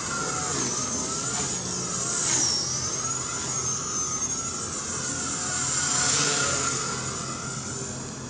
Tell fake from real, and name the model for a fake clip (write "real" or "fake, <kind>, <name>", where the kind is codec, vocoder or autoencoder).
real